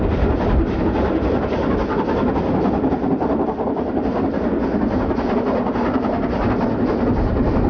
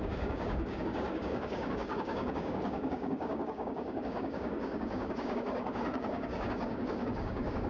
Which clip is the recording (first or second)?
first